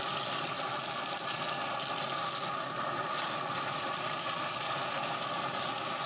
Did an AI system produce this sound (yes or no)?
no